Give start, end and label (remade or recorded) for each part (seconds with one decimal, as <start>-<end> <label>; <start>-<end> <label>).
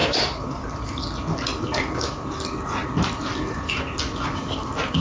0.0-1.0 remade; 1.0-5.0 recorded